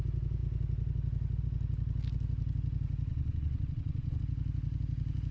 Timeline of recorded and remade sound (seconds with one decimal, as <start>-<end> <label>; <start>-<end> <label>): 0.0-3.1 recorded; 3.1-4.2 remade; 4.2-5.3 recorded